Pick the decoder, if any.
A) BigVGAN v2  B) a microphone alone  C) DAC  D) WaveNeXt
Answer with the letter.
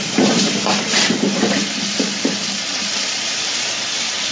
B